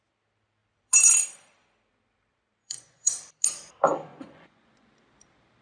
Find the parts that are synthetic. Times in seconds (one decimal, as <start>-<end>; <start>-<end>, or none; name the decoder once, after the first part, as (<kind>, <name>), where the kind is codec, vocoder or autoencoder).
2.6-3.2 (vocoder, Vocos); 4.1-4.9